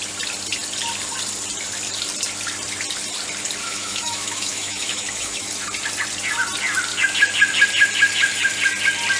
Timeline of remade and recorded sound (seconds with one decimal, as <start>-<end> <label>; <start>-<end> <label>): 0.0-3.6 recorded; 3.6-5.5 remade; 5.5-9.2 recorded